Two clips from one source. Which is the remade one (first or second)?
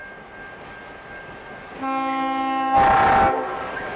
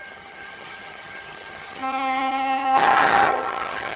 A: second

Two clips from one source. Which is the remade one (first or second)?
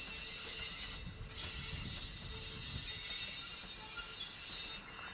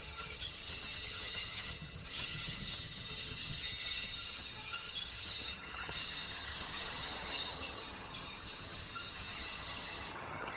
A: second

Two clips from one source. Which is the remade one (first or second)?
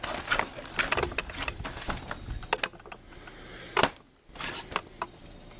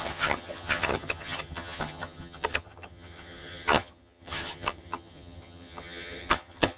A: second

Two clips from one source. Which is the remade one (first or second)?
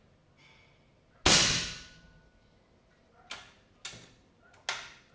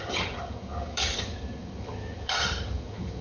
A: second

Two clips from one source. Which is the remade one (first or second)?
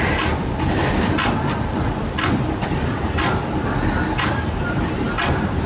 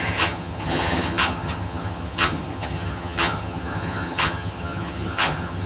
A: second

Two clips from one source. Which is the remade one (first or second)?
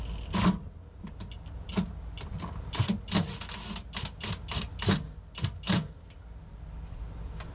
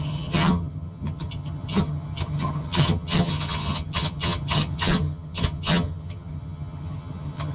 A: second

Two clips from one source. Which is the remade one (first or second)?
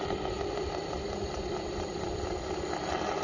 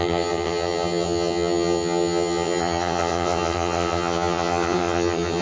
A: second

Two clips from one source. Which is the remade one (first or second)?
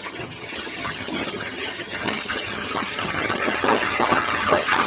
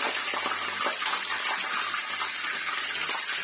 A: first